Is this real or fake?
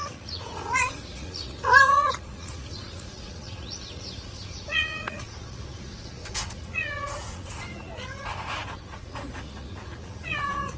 fake